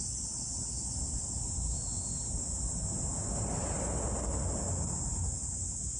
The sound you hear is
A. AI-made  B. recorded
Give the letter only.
B